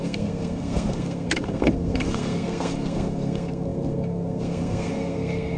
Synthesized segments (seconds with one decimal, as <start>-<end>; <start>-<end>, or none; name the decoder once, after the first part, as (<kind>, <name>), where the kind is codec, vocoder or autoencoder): 0.0-5.6 (codec, SNAC)